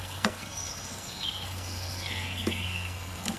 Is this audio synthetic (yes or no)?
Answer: yes